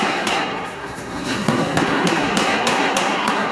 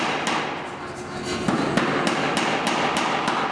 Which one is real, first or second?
second